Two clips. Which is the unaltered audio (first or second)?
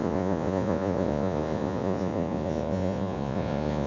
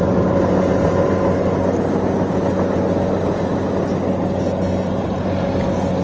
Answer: second